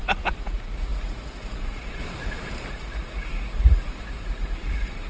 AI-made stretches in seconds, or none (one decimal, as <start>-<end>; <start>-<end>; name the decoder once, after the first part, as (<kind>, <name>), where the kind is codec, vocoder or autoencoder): 0.0-2.0 (vocoder, Vocos); 2.7-5.1